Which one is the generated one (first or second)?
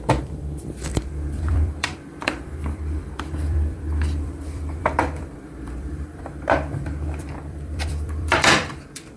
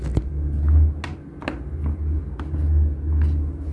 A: first